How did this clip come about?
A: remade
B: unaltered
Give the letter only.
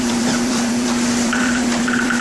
A